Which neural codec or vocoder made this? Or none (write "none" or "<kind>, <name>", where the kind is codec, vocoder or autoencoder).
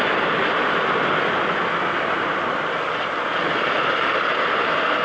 none